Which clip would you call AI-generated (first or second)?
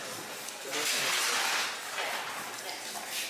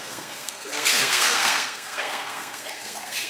second